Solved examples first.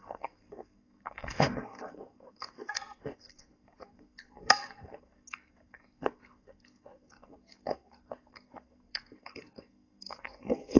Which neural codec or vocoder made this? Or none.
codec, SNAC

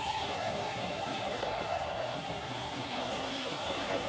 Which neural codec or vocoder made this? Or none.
codec, SNAC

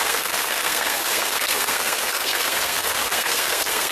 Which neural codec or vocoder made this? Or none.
codec, SNAC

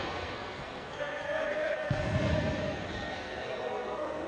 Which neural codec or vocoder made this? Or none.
codec, SNAC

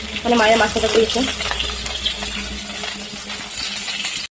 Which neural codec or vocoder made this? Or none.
none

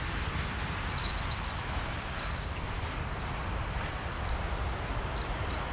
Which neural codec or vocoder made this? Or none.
none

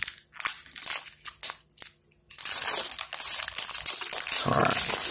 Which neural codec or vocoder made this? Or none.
none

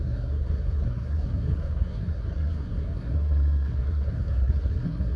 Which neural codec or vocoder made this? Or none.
codec, SNAC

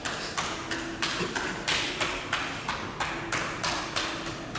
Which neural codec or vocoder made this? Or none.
none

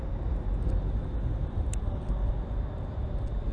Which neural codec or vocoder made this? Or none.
none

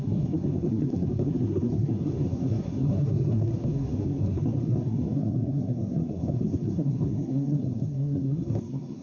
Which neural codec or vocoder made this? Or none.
codec, SNAC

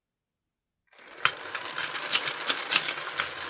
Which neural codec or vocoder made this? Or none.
none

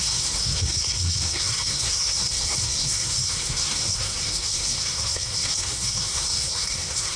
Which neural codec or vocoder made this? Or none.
codec, SNAC